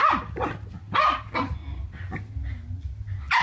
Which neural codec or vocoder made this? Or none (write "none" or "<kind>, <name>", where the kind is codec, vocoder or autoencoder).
none